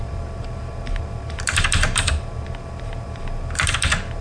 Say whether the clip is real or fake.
fake